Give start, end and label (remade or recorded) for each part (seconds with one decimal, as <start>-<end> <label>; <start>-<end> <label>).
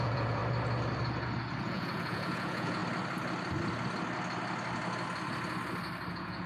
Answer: 0.0-0.4 remade; 0.4-1.6 recorded; 1.6-2.8 remade; 2.8-6.1 recorded; 6.1-6.5 remade